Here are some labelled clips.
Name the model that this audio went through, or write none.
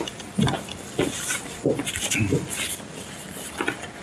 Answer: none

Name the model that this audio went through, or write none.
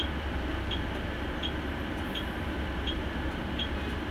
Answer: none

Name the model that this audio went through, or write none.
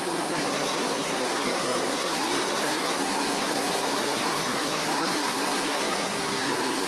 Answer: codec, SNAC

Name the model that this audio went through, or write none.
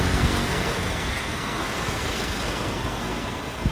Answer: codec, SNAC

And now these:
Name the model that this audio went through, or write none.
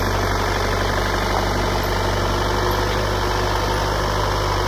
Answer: none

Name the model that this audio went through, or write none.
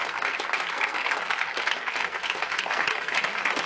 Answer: codec, SNAC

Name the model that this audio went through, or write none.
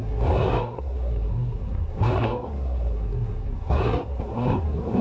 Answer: codec, SNAC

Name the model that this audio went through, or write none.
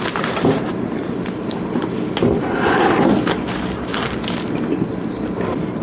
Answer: none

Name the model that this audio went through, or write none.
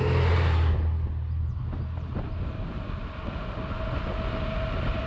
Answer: none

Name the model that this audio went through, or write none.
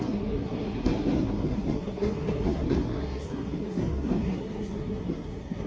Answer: codec, SNAC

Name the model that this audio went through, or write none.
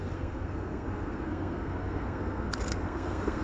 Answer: codec, SNAC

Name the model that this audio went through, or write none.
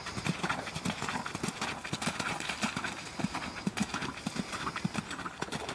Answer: none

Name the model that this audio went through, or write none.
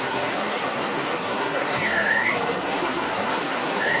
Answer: codec, SNAC